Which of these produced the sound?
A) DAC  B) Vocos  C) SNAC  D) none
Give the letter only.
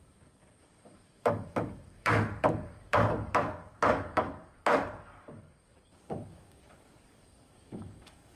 A